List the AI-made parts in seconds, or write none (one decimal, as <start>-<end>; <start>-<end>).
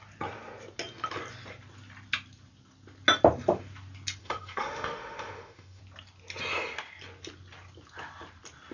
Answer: 4.2-5.8